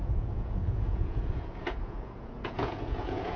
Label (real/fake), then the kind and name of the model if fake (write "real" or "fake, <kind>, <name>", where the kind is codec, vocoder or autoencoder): fake, vocoder, Vocos